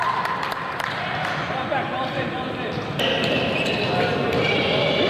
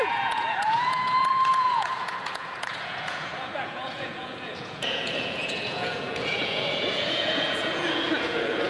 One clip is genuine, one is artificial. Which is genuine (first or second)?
first